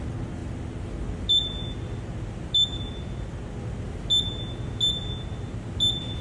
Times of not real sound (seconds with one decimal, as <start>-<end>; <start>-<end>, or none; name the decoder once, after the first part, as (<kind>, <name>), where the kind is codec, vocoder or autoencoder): none